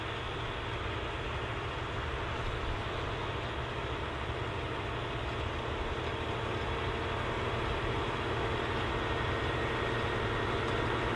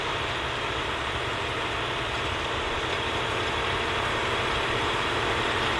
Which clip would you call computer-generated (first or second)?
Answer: second